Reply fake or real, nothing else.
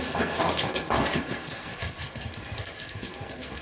fake